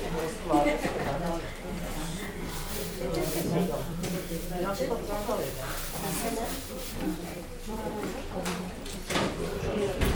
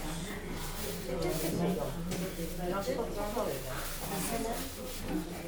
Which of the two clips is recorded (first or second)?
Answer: second